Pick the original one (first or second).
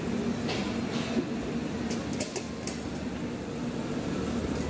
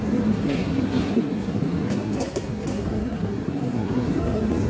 first